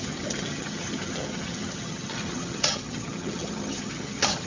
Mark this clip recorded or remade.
remade